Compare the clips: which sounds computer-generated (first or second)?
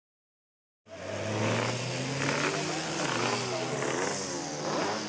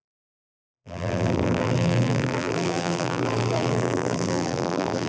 second